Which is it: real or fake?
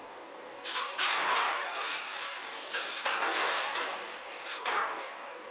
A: fake